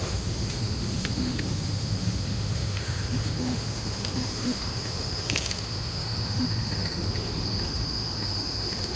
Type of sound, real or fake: fake